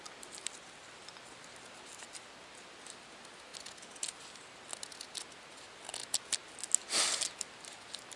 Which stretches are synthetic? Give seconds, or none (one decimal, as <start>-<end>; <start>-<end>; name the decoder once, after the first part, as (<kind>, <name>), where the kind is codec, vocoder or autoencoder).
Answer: none